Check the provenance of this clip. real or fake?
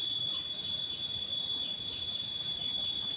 fake